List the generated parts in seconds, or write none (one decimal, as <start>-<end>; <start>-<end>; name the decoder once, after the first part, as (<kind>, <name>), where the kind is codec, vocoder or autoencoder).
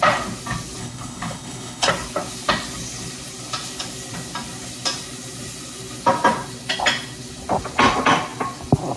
0.8-1.9 (codec, HILCodec)